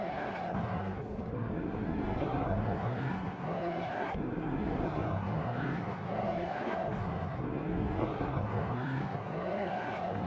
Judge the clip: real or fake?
fake